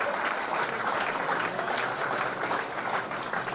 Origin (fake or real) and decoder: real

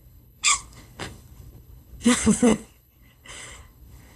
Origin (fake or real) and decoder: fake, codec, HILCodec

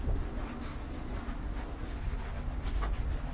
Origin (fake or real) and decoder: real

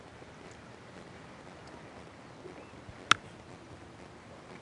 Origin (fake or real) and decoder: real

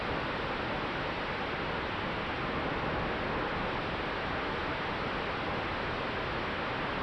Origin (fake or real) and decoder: real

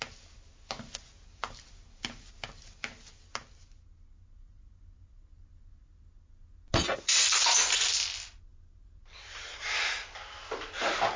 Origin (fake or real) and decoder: real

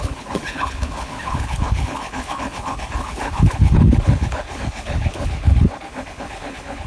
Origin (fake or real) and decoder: fake, codec, HILCodec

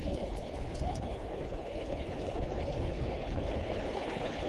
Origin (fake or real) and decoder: fake, codec, HILCodec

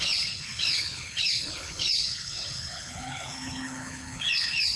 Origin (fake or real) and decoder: fake, codec, HILCodec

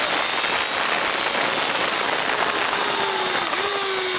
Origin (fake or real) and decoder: real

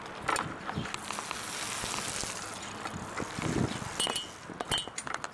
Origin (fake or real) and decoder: real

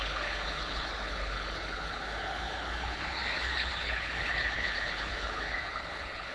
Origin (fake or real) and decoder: fake, codec, HILCodec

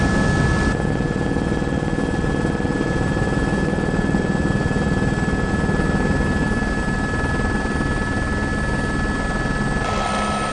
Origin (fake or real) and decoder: real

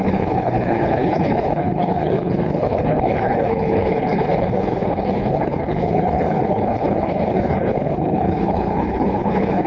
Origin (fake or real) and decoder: fake, codec, HILCodec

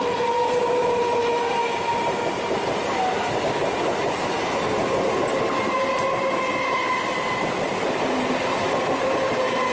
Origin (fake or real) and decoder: real